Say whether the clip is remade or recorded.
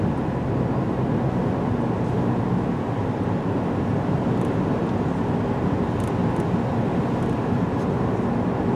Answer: recorded